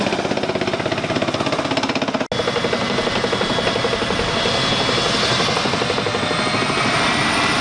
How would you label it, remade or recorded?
recorded